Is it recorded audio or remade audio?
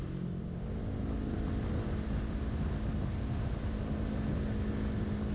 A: recorded